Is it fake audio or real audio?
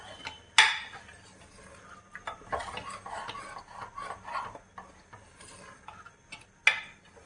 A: real